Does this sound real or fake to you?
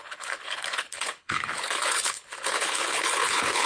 fake